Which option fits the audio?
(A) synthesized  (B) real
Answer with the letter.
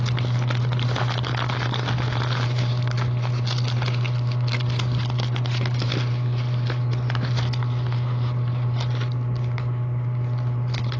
B